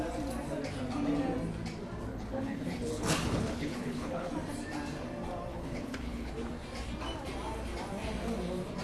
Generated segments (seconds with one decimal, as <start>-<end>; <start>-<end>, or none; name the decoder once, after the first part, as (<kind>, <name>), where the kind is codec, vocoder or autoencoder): 2.1-4.3 (codec, HILCodec); 5.5-6.3